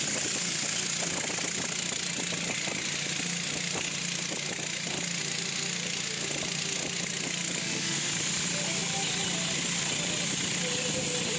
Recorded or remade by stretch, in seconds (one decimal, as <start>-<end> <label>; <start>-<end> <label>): 0.0-7.6 recorded; 7.6-8.1 remade; 8.1-11.4 recorded